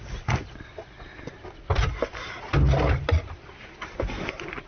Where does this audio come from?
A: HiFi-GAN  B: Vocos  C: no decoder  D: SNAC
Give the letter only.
C